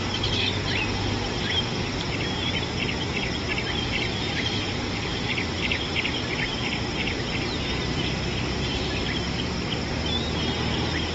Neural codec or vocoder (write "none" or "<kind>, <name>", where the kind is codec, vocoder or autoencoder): none